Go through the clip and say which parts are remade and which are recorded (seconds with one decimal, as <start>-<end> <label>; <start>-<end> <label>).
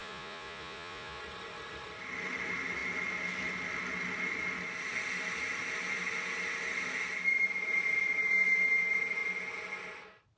0.0-1.2 remade; 1.2-10.4 recorded